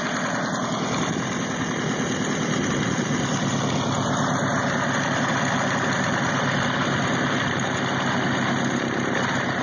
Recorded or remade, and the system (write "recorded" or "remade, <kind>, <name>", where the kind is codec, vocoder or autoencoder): recorded